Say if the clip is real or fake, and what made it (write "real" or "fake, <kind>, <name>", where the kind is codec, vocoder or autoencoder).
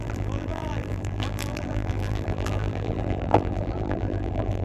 fake, vocoder, BigVGAN v2